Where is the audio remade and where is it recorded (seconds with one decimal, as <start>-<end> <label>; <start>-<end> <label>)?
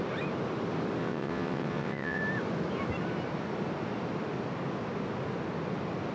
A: 0.0-1.0 recorded; 1.0-2.2 remade; 2.2-6.1 recorded